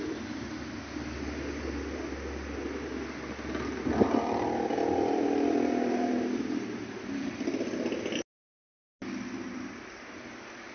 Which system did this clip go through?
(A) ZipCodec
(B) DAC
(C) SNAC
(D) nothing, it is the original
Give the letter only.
D